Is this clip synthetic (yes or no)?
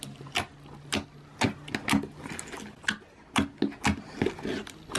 no